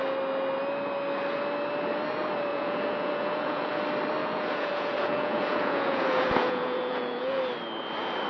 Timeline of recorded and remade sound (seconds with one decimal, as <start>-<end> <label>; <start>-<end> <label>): 0.0-2.5 recorded; 2.5-3.8 remade; 3.8-4.2 recorded; 4.2-7.4 remade; 7.4-8.3 recorded